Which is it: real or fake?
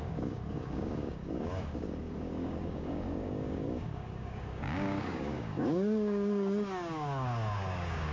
fake